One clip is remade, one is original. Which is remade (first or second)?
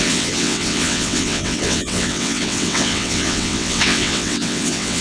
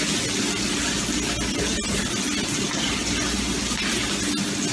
first